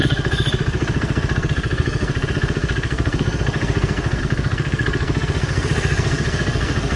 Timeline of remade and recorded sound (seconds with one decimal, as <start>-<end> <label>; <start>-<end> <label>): 0.0-7.0 remade